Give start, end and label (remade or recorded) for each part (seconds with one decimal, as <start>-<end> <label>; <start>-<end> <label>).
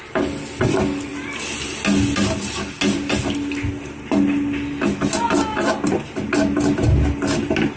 0.0-7.8 recorded